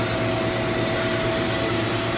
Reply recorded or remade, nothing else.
recorded